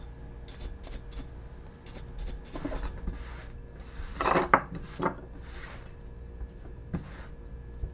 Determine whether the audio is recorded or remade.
recorded